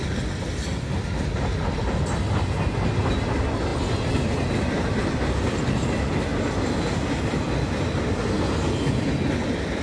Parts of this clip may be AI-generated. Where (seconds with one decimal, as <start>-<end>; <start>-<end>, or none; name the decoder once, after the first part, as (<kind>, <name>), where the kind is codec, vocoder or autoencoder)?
none